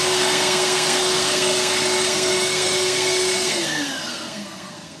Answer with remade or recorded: remade